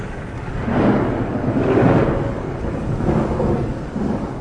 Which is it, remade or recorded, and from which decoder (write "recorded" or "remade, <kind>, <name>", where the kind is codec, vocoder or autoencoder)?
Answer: remade, codec, DAC